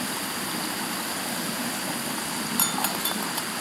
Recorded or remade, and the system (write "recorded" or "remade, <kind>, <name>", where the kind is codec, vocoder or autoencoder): recorded